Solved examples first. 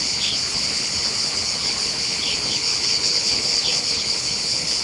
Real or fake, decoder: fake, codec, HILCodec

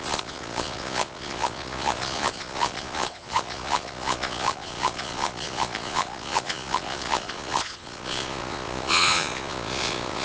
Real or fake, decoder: fake, vocoder, Vocos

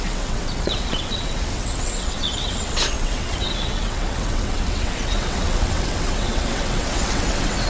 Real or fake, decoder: fake, vocoder, WaveNeXt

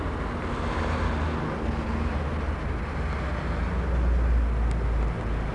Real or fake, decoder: real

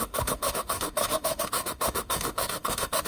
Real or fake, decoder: fake, autoencoder, DAC-VAE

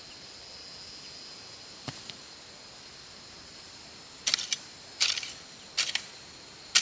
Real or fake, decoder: real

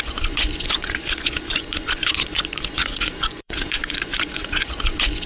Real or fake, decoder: fake, vocoder, Vocos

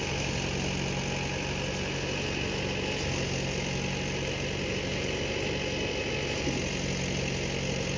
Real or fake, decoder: real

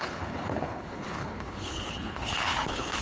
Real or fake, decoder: fake, codec, HILCodec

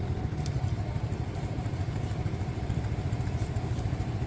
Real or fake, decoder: real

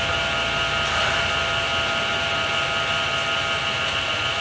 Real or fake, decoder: real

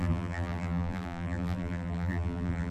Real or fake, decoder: fake, vocoder, BigVGAN v2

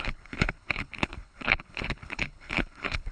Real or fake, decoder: fake, codec, HILCodec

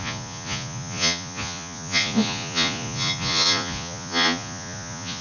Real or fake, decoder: fake, vocoder, Vocos